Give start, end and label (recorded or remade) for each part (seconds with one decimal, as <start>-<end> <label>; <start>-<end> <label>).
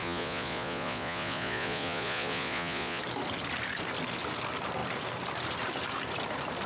0.0-3.0 remade; 3.0-6.7 recorded